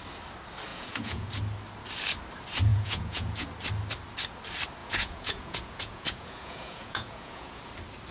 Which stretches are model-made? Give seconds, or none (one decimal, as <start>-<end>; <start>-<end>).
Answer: 0.7-1.3; 2.7-3.4; 4.8-7.6